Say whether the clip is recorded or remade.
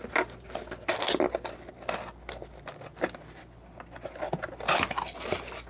recorded